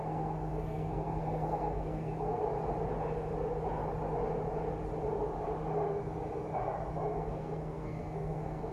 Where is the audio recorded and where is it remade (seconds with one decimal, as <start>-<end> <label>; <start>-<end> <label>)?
0.0-2.4 remade; 2.4-7.1 recorded; 7.1-8.7 remade